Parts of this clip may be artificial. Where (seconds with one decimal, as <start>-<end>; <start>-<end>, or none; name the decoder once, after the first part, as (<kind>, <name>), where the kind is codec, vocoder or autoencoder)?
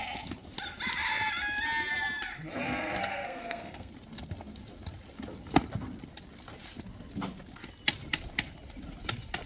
3.0-3.9 (codec, SNAC)